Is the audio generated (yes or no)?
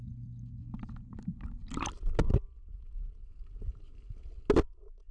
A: no